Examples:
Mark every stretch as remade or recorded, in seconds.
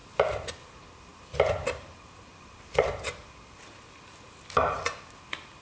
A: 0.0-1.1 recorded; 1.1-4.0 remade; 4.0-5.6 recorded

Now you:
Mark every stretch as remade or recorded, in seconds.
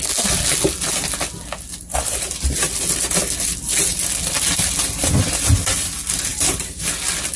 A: 0.0-6.3 recorded; 6.3-6.9 remade; 6.9-7.4 recorded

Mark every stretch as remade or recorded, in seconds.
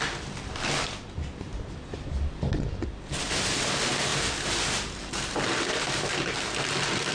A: 0.0-7.1 recorded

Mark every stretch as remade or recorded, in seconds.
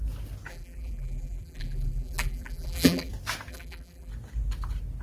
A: 0.0-0.5 recorded; 0.5-3.1 remade; 3.1-3.5 recorded; 3.5-4.1 remade; 4.1-5.0 recorded